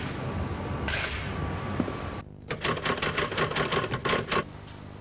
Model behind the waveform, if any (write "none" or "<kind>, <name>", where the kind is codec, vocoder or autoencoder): none